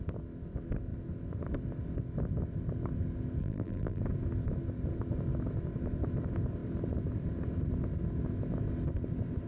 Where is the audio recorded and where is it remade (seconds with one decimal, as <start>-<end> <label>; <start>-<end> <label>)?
0.0-3.4 recorded; 3.4-4.0 remade; 4.0-9.5 recorded